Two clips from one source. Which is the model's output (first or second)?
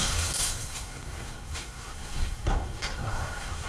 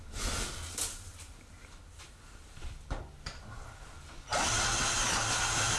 first